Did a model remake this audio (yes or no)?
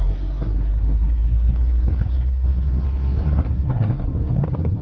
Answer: yes